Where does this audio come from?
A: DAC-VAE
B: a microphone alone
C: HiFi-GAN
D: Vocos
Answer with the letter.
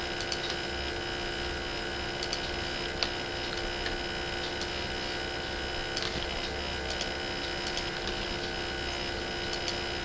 B